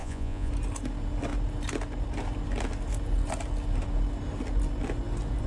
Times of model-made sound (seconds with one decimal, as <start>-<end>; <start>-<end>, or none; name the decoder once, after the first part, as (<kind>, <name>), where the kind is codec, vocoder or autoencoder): 0.0-0.5 (vocoder, Vocos)